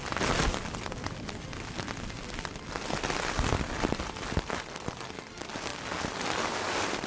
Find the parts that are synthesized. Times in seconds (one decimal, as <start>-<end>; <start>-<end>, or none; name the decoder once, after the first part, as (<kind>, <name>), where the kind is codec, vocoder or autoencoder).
none